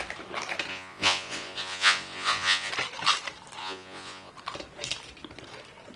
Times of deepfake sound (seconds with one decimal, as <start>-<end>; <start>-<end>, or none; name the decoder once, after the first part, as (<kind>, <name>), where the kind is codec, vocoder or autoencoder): 0.7-2.7 (vocoder, Vocos); 3.6-4.3